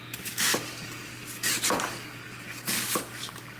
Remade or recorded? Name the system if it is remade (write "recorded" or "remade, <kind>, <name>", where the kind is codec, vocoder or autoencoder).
remade, codec, DAC